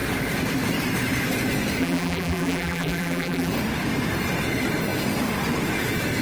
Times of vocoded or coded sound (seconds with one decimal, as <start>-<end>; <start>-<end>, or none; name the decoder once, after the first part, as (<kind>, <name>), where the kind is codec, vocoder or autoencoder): 1.8-3.5 (vocoder, BigVGAN v2)